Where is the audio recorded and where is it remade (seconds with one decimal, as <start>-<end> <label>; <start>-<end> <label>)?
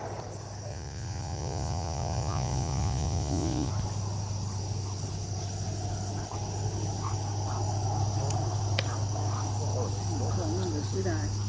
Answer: 0.0-0.7 recorded; 0.7-3.7 remade; 3.7-11.5 recorded